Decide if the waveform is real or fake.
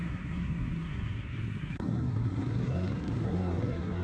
fake